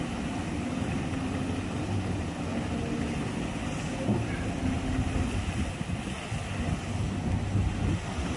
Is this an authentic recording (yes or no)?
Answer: yes